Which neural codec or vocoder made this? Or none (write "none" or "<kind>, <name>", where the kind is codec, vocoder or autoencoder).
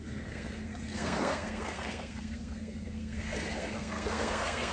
codec, SNAC